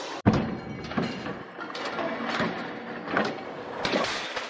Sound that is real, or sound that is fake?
real